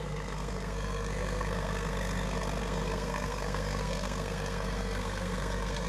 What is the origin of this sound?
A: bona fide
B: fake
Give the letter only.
B